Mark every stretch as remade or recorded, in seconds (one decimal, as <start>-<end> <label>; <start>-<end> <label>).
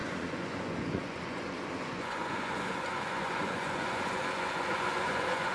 0.0-5.5 remade